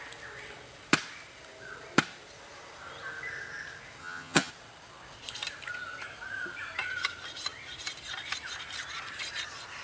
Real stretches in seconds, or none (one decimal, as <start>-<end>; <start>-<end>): 0.0-4.0; 4.5-9.8